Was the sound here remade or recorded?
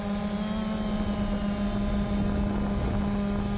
recorded